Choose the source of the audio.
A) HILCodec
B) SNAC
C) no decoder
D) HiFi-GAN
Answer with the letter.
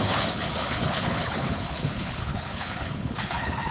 A